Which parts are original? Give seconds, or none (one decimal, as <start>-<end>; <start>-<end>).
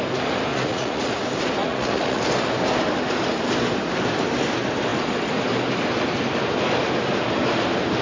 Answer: 0.0-0.5; 1.1-1.6; 2.2-8.0